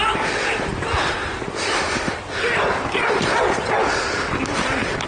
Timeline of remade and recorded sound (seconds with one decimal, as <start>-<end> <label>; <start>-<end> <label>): 0.0-5.1 recorded